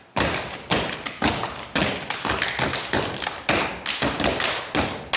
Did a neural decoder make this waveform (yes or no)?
no